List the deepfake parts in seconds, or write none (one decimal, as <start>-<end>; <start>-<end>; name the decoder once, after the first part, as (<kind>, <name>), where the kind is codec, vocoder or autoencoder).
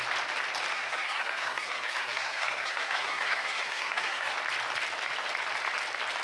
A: 0.7-4.3 (codec, SNAC)